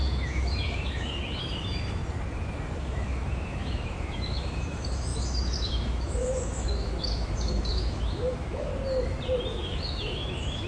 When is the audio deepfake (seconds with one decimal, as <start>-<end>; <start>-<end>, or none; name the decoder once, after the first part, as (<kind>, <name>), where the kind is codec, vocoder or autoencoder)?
0.0-2.0 (autoencoder, DAC-VAE); 2.8-8.7; 9.5-10.7